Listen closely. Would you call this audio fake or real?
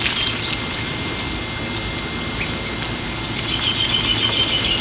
real